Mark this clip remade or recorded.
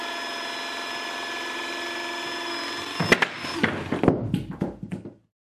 recorded